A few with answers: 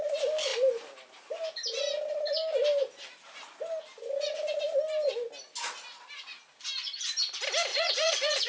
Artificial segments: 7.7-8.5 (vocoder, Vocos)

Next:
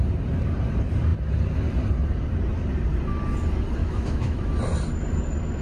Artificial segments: 3.8-4.5 (autoencoder, DAC-VAE)

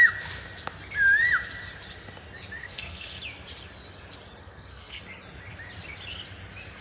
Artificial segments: 2.6-3.2 (codec, SNAC); 4.4-5.0

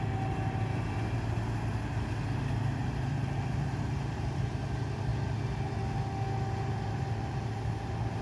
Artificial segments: 2.8-4.5 (vocoder, BigVGAN v2)

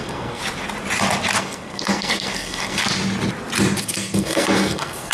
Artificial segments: 0.0-0.4 (codec, SNAC); 1.4-2.8; 3.8-5.1